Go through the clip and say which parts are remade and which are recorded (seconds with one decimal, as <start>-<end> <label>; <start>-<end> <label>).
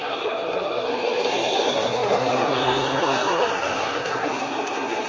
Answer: 0.0-5.1 remade